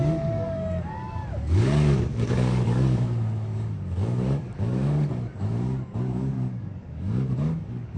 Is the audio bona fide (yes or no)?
no